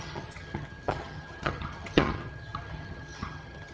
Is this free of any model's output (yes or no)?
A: no